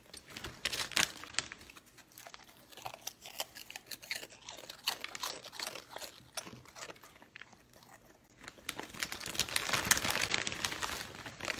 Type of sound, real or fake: real